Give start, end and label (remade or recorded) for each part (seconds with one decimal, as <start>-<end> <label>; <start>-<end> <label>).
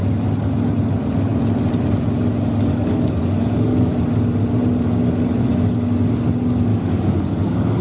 0.0-2.7 recorded; 2.7-3.9 remade; 3.9-6.7 recorded; 6.7-7.8 remade